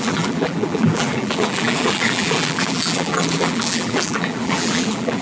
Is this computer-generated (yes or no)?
yes